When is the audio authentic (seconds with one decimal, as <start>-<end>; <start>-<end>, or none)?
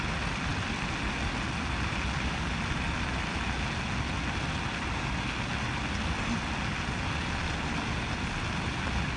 0.0-9.2